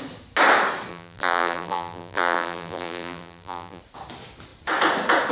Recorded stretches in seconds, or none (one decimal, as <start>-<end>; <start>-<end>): 0.0-0.9; 3.8-5.3